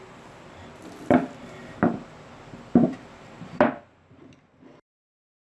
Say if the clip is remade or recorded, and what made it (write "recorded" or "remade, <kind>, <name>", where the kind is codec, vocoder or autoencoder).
recorded